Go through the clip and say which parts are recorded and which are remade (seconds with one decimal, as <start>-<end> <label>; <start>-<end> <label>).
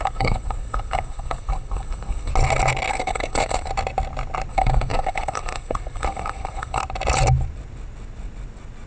0.0-2.3 remade; 2.3-2.9 recorded; 2.9-3.7 remade; 3.7-4.5 recorded; 4.5-6.8 remade; 6.8-8.9 recorded